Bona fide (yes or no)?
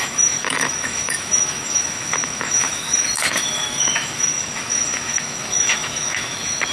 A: no